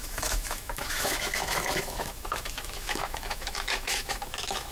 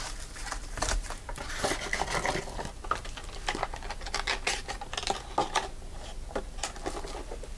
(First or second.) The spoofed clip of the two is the first